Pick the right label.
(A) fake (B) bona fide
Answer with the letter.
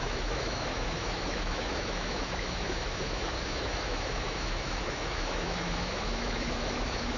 A